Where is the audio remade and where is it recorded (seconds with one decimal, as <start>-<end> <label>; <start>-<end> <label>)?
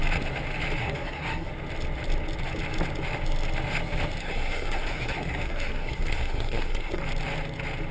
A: 0.0-0.8 recorded; 0.8-1.5 remade; 1.5-4.2 recorded; 4.2-7.0 remade; 7.0-7.9 recorded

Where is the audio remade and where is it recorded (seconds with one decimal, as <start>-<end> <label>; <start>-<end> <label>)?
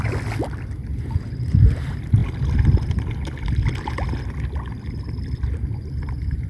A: 0.0-6.5 recorded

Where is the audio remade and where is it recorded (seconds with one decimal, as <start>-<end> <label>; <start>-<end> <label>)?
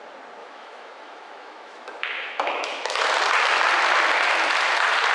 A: 0.0-0.4 recorded; 0.4-3.0 remade; 3.0-5.1 recorded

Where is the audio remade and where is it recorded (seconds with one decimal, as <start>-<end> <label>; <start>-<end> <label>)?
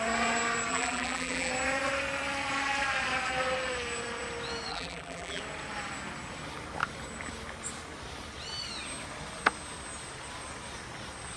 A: 0.0-0.7 recorded; 0.7-1.5 remade; 1.5-4.7 recorded; 4.7-5.4 remade; 5.4-11.4 recorded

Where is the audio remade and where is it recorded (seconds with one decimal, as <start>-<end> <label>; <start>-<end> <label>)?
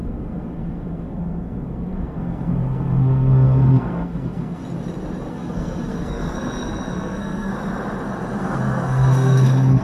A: 0.0-4.6 remade; 4.6-5.3 recorded; 5.3-7.5 remade; 7.5-8.4 recorded; 8.4-9.8 remade